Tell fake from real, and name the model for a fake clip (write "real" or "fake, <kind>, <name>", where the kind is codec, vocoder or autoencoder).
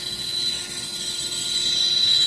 real